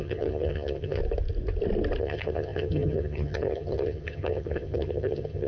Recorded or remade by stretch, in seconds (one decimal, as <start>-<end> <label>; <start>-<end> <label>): 0.0-1.0 remade; 1.0-2.0 recorded; 2.0-5.5 remade